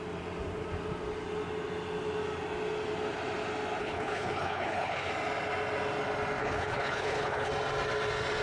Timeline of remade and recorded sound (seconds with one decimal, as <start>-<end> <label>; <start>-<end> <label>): 0.0-3.8 recorded; 3.8-5.1 remade; 5.1-6.4 recorded; 6.4-7.5 remade; 7.5-8.4 recorded